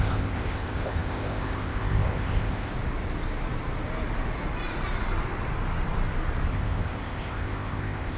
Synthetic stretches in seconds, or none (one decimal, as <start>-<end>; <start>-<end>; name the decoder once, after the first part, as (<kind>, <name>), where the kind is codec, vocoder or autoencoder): 0.0-2.7 (codec, ZipCodec); 6.5-8.2